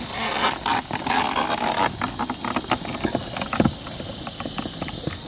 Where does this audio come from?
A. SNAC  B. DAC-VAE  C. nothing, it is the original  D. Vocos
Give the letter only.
C